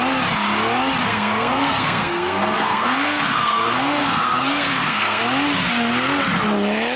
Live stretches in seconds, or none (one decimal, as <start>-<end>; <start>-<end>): 0.0-1.0; 5.2-7.0